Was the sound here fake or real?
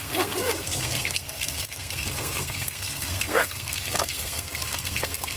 fake